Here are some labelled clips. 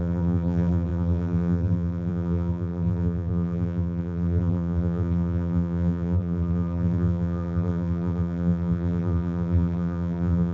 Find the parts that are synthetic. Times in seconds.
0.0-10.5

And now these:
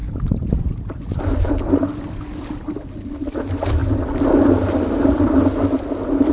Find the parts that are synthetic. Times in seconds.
0.0-2.1

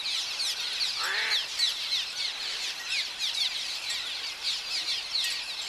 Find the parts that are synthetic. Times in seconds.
1.4-4.7

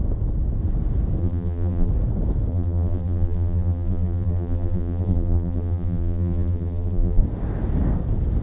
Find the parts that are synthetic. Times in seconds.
1.2-1.9; 2.5-7.2

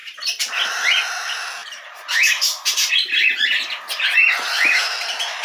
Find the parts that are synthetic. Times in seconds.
1.6-2.9

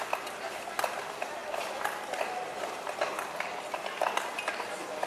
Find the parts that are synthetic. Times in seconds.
none

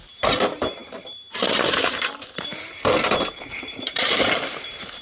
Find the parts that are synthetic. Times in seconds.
0.0-5.0